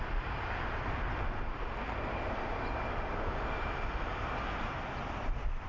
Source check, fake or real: real